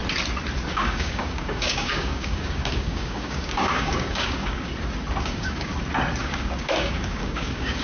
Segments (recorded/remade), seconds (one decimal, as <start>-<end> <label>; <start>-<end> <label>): 0.0-0.7 recorded; 0.7-4.7 remade; 4.7-5.2 recorded; 5.2-5.7 remade; 5.7-6.2 recorded; 6.2-7.8 remade